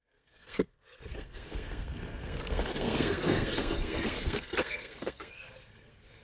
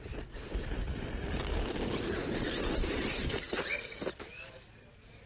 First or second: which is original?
second